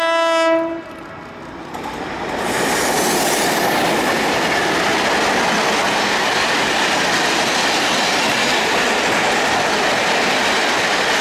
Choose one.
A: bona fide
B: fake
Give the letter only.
A